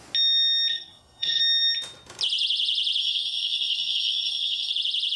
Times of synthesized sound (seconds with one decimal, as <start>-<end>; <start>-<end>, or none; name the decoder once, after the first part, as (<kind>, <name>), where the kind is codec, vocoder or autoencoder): 0.7-1.4 (codec, SNAC); 3.0-4.7